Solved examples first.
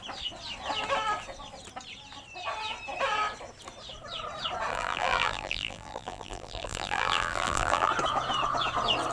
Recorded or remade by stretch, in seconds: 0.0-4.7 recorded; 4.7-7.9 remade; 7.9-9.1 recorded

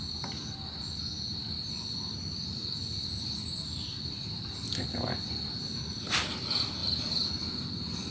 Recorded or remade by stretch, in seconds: 0.0-1.4 recorded; 1.4-4.8 remade; 4.8-6.8 recorded; 6.8-7.3 remade; 7.3-8.1 recorded

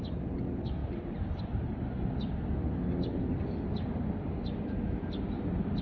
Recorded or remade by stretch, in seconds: 0.0-0.8 recorded; 0.8-1.4 remade; 1.4-5.8 recorded

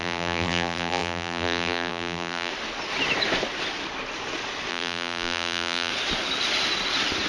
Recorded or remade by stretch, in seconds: 0.0-2.5 remade; 2.5-4.7 recorded; 4.7-5.9 remade; 5.9-7.3 recorded

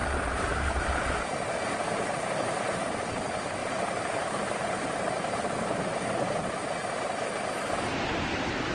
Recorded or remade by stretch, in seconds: 0.0-0.8 remade; 0.8-3.6 recorded; 3.6-6.6 remade; 6.6-8.7 recorded

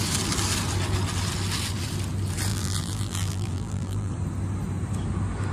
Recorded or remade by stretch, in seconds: 0.0-2.5 recorded; 2.5-4.1 remade; 4.1-5.5 recorded

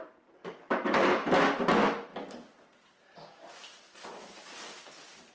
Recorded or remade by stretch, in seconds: 0.0-5.3 recorded